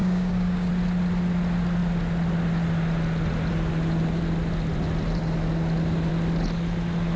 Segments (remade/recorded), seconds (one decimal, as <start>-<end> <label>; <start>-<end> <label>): 0.0-0.7 remade; 0.7-7.2 recorded